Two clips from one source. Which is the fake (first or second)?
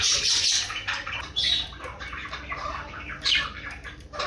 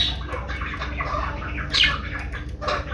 first